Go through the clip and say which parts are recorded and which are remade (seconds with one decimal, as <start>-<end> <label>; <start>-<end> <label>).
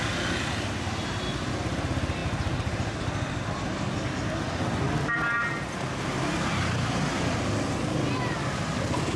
0.0-9.2 recorded